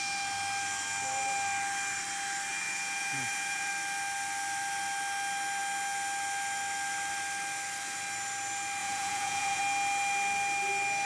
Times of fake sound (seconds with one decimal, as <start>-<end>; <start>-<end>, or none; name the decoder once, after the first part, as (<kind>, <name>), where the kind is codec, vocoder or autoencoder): 2.5-3.7 (vocoder, Vocos); 8.8-9.6